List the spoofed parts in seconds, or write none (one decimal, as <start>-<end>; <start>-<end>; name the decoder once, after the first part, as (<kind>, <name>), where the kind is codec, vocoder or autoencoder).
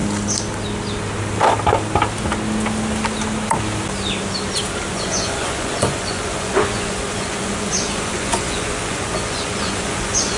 4.9-10.4 (vocoder, Vocos)